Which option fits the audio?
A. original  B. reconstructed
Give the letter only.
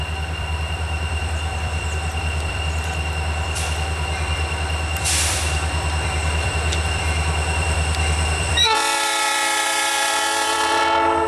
B